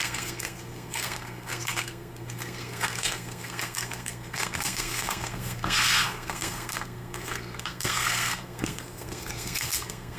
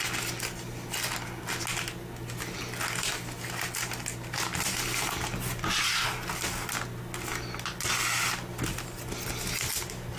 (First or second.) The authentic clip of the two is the second